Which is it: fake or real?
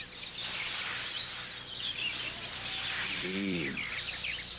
fake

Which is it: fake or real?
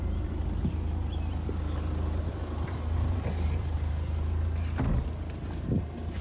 real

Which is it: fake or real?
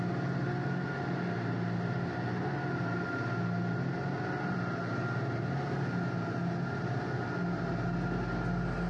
real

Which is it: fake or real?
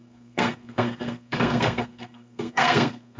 fake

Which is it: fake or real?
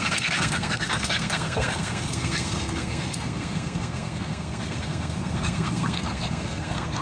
fake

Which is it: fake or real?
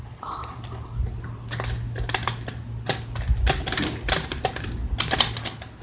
real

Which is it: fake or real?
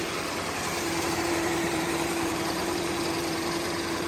fake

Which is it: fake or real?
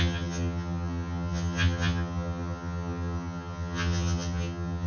fake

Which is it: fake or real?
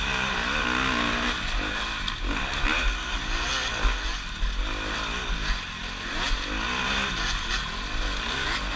real